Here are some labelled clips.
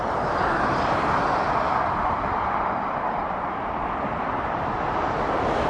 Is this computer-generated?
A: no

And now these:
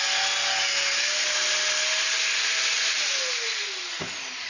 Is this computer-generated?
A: no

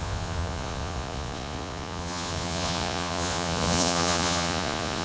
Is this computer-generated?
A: yes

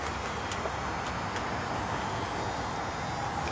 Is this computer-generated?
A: no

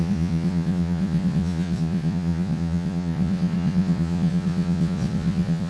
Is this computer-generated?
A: yes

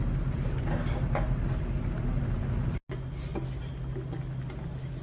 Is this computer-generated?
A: no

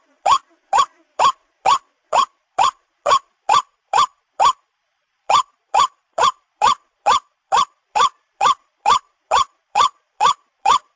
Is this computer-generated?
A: yes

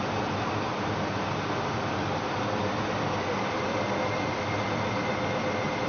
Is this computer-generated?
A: no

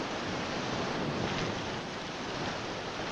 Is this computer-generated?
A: no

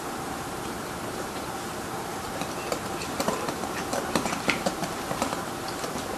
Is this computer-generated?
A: yes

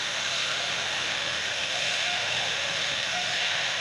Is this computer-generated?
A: yes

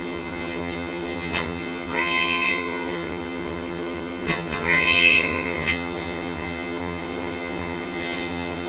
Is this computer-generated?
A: yes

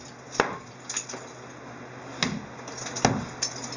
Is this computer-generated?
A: no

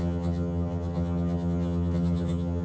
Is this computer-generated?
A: yes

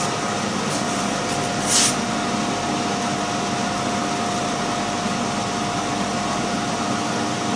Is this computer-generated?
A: no